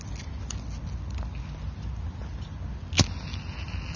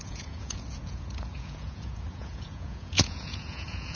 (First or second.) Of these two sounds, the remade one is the second